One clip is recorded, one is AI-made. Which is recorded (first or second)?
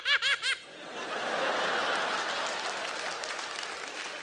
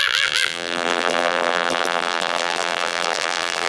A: first